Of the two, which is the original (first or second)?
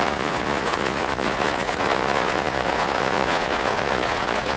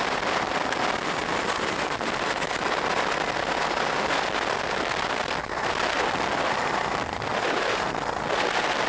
second